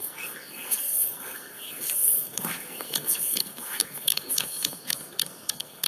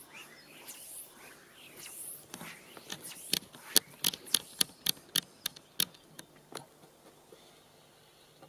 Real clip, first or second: second